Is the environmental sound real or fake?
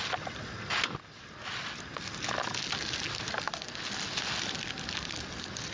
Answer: real